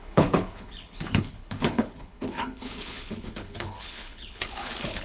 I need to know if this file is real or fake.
fake